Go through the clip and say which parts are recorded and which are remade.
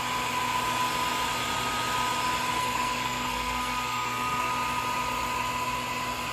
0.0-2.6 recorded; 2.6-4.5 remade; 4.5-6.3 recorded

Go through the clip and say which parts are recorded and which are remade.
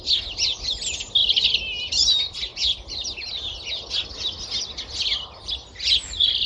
0.0-6.5 recorded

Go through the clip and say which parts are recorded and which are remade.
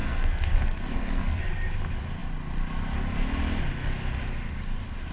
0.0-1.4 remade; 1.4-5.1 recorded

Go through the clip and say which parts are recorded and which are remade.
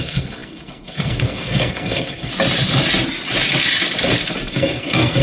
0.0-2.3 remade; 2.3-4.5 recorded; 4.5-5.2 remade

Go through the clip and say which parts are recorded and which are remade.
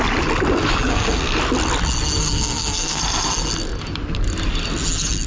0.0-0.9 recorded; 0.9-1.4 remade; 1.4-2.2 recorded; 2.2-3.0 remade; 3.0-5.3 recorded